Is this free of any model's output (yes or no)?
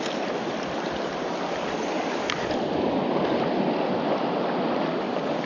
yes